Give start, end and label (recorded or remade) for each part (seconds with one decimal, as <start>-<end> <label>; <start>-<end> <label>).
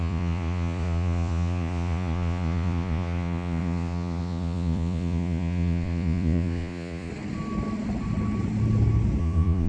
0.0-7.1 remade; 7.1-9.2 recorded; 9.2-9.7 remade